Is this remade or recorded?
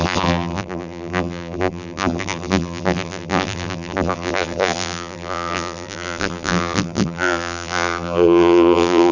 remade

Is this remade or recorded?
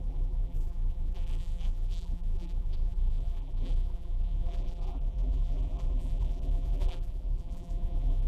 remade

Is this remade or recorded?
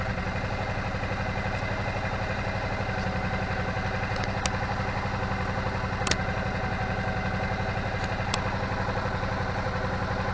recorded